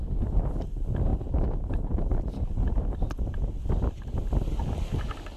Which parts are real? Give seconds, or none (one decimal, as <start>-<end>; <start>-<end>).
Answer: 0.0-1.1; 3.7-5.4